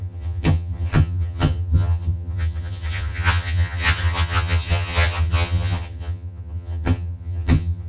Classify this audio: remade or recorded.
remade